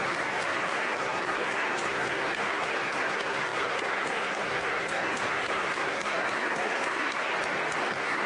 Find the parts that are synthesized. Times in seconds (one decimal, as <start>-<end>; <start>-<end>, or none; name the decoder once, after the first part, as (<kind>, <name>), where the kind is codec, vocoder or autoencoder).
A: 0.0-7.3 (codec, SNAC); 7.8-8.3